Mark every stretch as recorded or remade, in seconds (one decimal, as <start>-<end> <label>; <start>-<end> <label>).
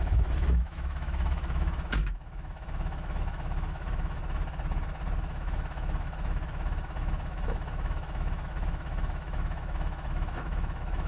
0.0-4.2 remade; 4.2-5.2 recorded; 5.2-11.1 remade